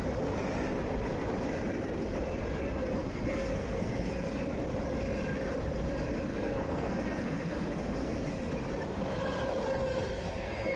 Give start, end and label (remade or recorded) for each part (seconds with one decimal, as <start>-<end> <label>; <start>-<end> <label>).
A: 0.0-3.0 recorded; 3.0-4.3 remade; 4.3-6.3 recorded; 6.3-8.5 remade; 8.5-9.9 recorded; 9.9-10.8 remade